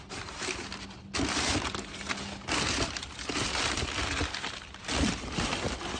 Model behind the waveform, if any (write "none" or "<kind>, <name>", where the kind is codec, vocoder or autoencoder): none